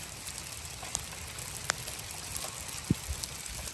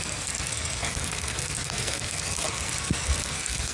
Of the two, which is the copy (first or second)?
second